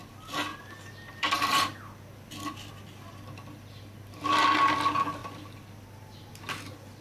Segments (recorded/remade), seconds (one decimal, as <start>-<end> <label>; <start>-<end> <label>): 0.0-0.5 recorded; 0.5-4.7 remade; 4.7-5.2 recorded; 5.2-6.3 remade; 6.3-7.0 recorded